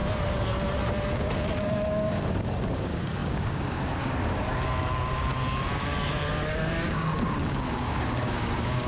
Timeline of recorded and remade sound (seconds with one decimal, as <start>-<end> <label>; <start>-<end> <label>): 0.0-1.1 recorded; 1.1-8.9 remade